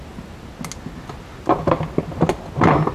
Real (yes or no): yes